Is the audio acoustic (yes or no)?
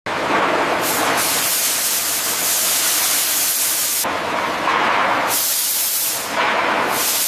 yes